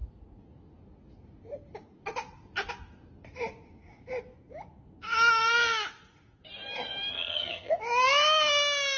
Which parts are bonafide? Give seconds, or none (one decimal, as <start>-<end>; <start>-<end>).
0.0-7.1; 7.7-9.0